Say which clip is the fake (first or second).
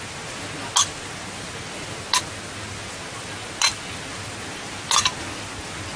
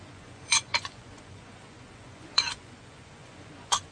second